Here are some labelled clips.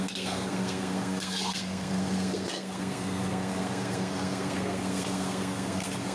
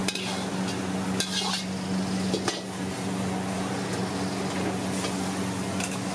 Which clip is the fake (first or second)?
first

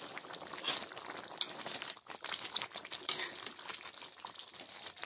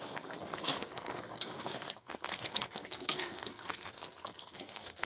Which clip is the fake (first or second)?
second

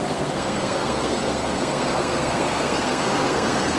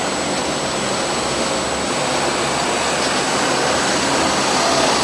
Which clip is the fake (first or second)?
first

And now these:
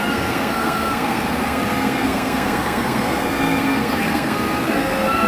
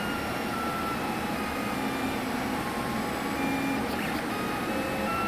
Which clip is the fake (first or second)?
first